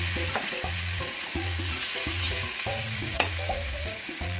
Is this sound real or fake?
fake